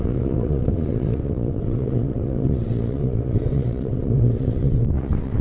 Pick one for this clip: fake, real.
fake